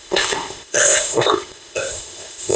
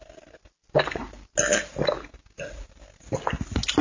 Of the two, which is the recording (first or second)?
second